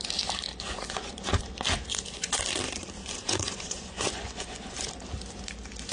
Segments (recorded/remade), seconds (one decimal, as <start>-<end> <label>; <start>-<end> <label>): 0.0-0.5 recorded; 0.5-1.4 remade; 1.4-1.9 recorded; 1.9-2.4 remade; 2.4-3.0 recorded; 3.0-4.9 remade; 4.9-5.9 recorded